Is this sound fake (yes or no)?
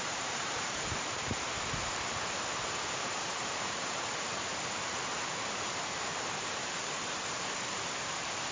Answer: yes